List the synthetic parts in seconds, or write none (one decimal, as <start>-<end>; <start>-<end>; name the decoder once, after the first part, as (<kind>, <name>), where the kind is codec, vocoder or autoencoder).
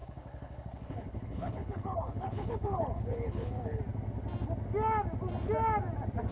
0.0-3.8 (codec, HILCodec)